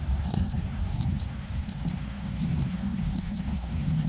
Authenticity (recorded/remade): remade